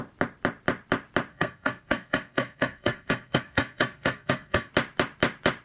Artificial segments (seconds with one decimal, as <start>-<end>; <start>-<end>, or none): 1.3-4.7